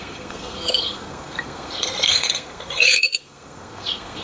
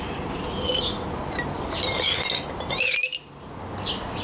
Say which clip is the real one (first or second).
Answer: second